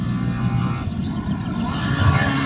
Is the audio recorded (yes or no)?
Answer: yes